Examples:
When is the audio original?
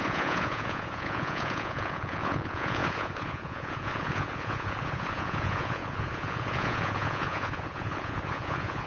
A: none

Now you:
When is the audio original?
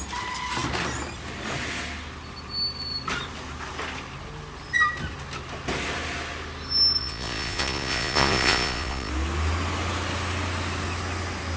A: 0.0-7.0; 9.1-11.6